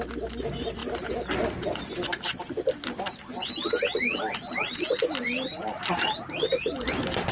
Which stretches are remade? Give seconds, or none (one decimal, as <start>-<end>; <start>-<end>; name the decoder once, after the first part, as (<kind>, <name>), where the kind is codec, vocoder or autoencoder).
none